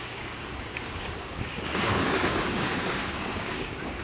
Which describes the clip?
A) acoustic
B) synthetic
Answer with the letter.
B